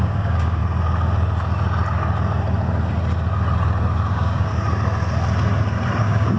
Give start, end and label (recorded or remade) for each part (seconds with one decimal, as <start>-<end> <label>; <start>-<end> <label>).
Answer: 0.0-0.6 remade; 0.6-4.1 recorded; 4.1-4.5 remade; 4.5-6.0 recorded; 6.0-6.4 remade